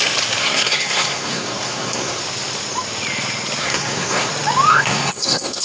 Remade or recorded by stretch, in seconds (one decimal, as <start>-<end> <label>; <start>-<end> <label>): 0.0-0.4 recorded; 0.4-2.2 remade; 2.2-3.6 recorded; 3.6-4.3 remade; 4.3-4.7 recorded; 4.7-5.6 remade